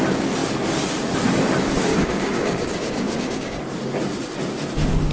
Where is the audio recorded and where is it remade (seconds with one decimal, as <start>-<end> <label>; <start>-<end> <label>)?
0.0-1.9 recorded; 1.9-3.6 remade; 3.6-5.1 recorded